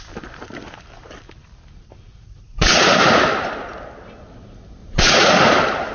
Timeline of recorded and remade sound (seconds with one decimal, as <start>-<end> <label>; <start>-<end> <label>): 0.0-2.1 recorded; 2.1-2.9 remade; 2.9-4.8 recorded; 4.8-5.4 remade; 5.4-5.9 recorded